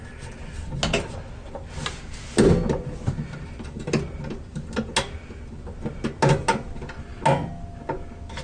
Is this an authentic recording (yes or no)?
yes